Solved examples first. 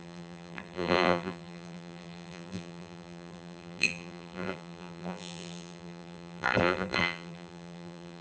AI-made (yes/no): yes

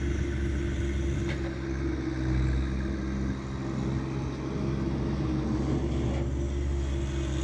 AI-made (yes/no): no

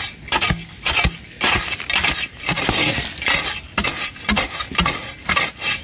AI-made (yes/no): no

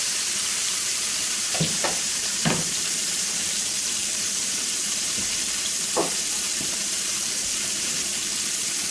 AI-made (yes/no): yes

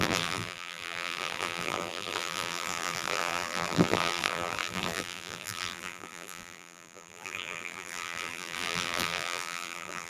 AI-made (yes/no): yes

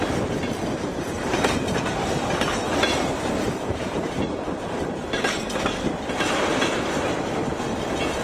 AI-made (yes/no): yes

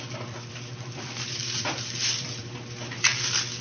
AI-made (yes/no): yes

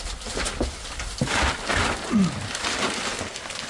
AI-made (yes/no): no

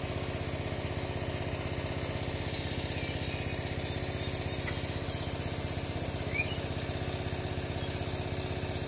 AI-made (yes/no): no